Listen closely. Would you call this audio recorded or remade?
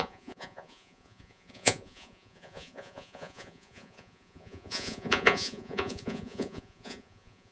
remade